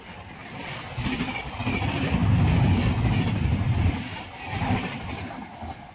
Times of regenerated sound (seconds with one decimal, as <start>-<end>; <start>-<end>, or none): none